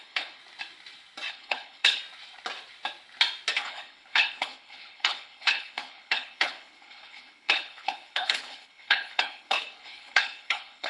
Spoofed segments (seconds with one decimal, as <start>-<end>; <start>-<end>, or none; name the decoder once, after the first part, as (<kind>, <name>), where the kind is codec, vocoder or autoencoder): 0.0-0.4 (codec, HILCodec); 1.3-2.0; 3.5-10.9